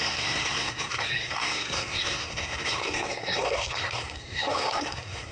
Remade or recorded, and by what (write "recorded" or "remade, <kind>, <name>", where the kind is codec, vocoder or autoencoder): remade, codec, SNAC